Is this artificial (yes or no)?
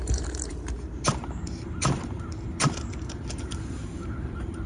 yes